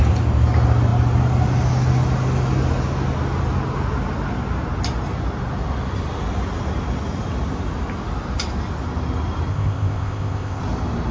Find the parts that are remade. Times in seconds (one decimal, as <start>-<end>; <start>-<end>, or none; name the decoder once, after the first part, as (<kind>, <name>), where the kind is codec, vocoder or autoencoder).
9.5-10.6 (codec, ZipCodec)